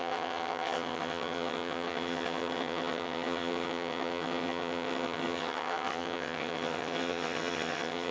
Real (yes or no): no